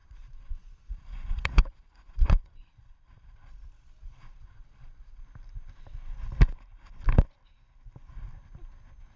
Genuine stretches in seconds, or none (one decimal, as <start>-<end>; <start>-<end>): 5.2-9.2